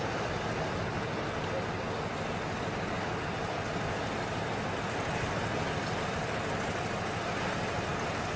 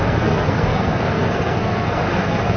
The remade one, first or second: second